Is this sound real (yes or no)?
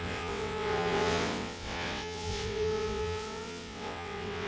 no